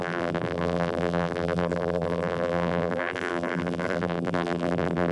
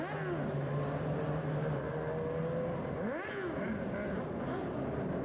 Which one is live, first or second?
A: second